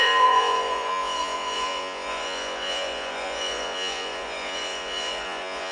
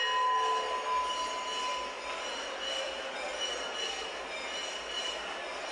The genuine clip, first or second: second